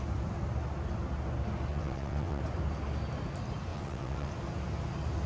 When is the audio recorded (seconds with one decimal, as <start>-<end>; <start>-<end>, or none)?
0.0-1.7; 2.4-3.7; 4.3-5.3